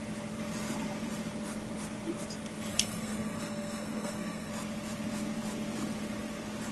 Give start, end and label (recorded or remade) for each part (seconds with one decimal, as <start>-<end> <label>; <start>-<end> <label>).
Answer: 0.0-2.7 recorded; 2.7-4.5 remade; 4.5-6.7 recorded